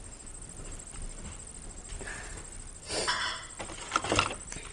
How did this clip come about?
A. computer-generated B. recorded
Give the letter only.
B